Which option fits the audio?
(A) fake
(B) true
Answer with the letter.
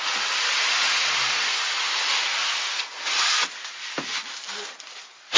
B